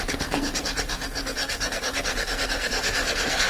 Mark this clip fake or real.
fake